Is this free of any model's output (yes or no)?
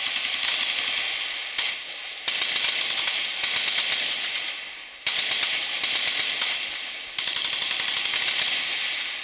yes